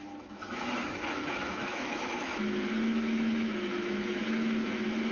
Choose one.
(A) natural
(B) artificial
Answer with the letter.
B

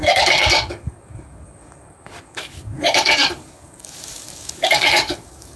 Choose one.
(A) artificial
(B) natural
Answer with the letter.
A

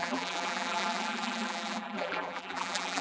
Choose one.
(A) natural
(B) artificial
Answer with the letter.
B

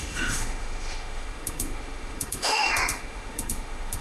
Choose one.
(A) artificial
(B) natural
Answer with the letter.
A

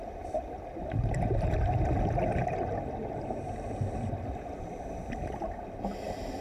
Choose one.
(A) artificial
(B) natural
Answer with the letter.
B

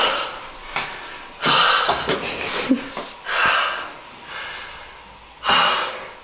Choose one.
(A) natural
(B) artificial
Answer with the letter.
A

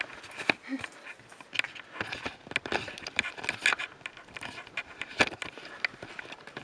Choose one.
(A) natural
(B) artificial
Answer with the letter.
A